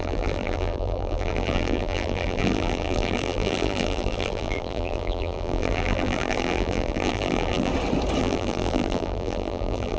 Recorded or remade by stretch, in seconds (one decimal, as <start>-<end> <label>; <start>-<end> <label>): 0.0-7.7 remade; 7.7-8.2 recorded; 8.2-10.0 remade

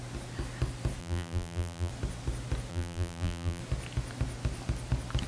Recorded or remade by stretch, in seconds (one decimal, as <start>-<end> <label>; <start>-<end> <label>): 0.0-1.0 recorded; 1.0-1.9 remade; 1.9-2.7 recorded; 2.7-3.6 remade; 3.6-5.3 recorded